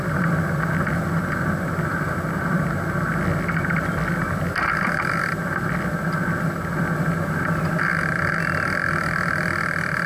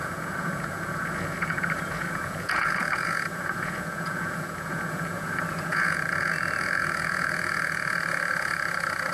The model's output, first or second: second